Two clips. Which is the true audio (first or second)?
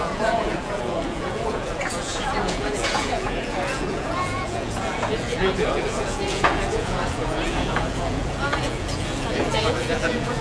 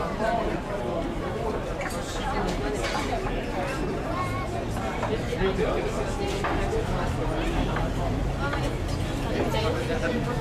second